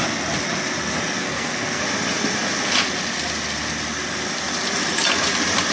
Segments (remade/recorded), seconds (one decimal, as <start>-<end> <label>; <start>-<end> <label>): 0.0-1.2 recorded; 1.2-1.8 remade; 1.8-5.7 recorded